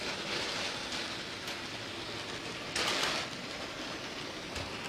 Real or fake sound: real